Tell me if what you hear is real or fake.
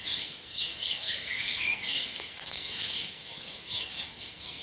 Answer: fake